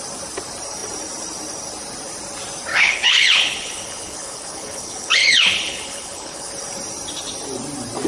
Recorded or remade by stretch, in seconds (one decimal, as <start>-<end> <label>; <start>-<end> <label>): 0.0-2.7 recorded; 2.7-6.5 remade; 6.5-8.1 recorded